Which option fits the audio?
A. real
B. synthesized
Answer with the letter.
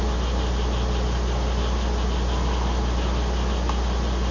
A